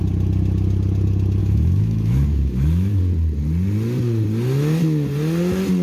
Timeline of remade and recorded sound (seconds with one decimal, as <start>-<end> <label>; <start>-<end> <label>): 0.0-1.4 recorded; 1.4-3.0 remade; 3.0-5.8 recorded